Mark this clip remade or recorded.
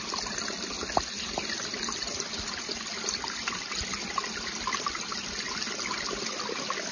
recorded